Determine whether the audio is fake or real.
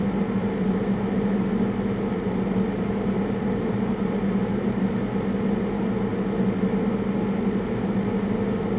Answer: real